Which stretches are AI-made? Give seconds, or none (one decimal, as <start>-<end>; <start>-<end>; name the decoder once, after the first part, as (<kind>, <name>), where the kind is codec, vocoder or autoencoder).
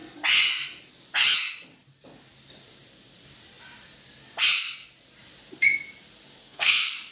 6.4-7.1 (codec, SNAC)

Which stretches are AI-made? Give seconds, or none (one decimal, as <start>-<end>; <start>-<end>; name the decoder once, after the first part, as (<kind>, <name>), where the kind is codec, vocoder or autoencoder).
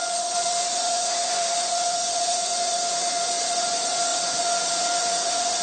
0.0-5.6 (vocoder, Vocos)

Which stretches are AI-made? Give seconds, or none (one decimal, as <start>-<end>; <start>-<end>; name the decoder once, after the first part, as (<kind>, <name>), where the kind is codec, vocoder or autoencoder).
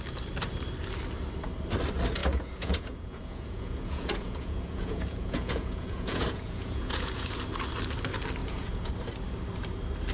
2.2-7.4 (vocoder, Vocos); 8.4-8.9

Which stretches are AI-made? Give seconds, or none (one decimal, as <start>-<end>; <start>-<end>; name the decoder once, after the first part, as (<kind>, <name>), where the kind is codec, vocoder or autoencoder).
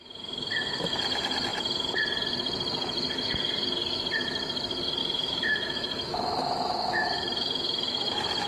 5.0-8.1 (autoencoder, DAC-VAE)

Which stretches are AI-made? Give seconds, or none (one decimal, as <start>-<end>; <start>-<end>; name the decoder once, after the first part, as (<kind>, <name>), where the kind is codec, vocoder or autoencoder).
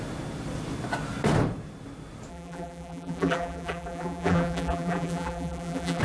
2.3-6.0 (vocoder, BigVGAN v2)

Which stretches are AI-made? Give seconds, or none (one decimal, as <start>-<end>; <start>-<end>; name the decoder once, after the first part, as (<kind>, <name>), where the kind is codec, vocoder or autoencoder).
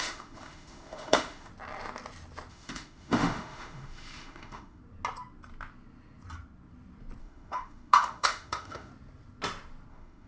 0.0-1.5 (autoencoder, DAC-VAE); 2.5-4.8; 7.2-8.9; 9.9-10.3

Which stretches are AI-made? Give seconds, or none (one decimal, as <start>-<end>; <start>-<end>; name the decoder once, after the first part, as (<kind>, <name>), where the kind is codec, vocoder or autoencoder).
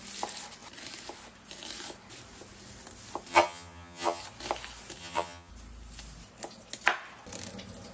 3.3-4.2 (vocoder, HiFi-GAN); 5.0-5.5